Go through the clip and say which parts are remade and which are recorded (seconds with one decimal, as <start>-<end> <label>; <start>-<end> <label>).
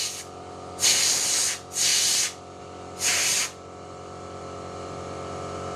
0.0-5.8 recorded